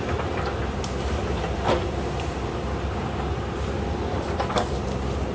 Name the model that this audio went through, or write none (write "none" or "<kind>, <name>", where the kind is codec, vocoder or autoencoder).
vocoder, BigVGAN v2